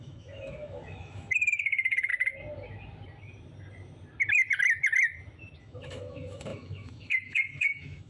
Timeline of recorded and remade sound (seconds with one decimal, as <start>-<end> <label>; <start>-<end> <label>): 0.0-2.1 remade; 2.1-5.6 recorded; 5.6-8.1 remade